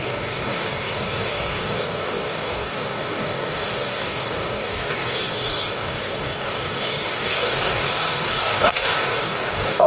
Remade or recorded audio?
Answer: remade